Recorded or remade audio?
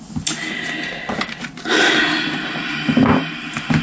recorded